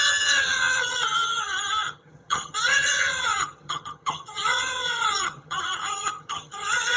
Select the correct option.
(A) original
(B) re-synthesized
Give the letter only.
B